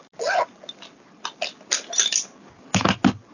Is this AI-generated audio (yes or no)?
no